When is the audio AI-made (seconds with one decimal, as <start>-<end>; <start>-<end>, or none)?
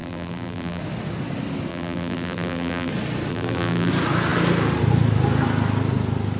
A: 0.0-0.8; 1.7-2.9; 3.3-3.9